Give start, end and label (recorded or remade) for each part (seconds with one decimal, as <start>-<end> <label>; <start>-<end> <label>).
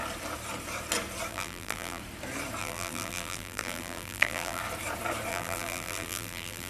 0.0-1.3 recorded; 1.3-2.0 remade; 2.0-2.6 recorded; 2.6-4.6 remade; 4.6-5.3 recorded; 5.3-6.7 remade